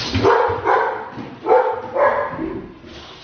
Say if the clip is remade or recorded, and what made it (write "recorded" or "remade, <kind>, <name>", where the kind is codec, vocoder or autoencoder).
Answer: recorded